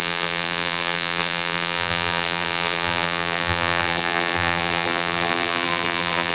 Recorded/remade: remade